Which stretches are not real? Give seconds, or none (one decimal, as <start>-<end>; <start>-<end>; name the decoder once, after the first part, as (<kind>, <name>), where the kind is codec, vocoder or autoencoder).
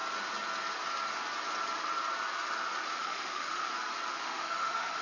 3.0-3.6 (autoencoder, DAC-VAE); 4.1-5.0